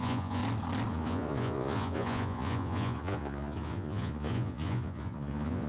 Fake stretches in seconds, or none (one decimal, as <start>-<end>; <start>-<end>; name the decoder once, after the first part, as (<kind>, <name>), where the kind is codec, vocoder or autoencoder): 0.0-0.4 (vocoder, Vocos); 0.9-5.7

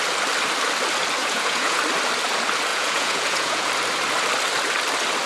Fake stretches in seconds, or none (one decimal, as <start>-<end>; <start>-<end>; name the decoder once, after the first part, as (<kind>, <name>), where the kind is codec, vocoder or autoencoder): 1.2-1.8 (vocoder, Vocos); 2.7-3.7

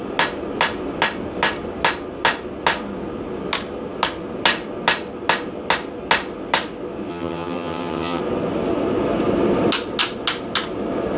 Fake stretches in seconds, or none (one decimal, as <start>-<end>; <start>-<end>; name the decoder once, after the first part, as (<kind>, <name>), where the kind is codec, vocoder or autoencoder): 7.1-8.2 (vocoder, HiFi-GAN)

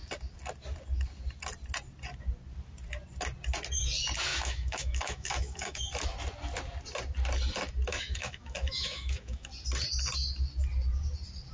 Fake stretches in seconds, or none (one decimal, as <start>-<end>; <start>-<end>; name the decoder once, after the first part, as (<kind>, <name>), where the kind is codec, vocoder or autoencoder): 4.3-5.9 (autoencoder, DAC-VAE); 7.9-9.5

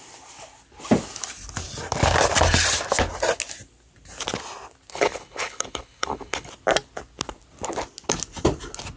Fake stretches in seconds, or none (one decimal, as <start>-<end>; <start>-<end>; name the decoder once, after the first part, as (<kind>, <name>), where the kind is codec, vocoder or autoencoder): 4.9-6.5 (codec, HILCodec)

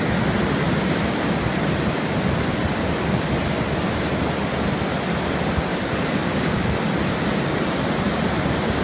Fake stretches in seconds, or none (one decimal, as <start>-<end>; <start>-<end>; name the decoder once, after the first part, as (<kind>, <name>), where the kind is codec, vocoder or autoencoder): 5.7-6.8 (codec, DAC)

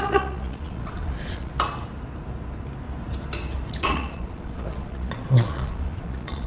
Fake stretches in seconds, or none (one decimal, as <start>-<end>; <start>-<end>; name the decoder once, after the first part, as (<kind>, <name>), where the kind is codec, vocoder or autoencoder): 0.0-1.5 (vocoder, Vocos); 3.7-6.5

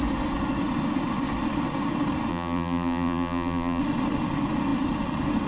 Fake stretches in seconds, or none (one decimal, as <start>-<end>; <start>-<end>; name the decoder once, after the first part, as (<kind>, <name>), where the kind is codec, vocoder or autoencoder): 2.3-3.8 (vocoder, BigVGAN v2)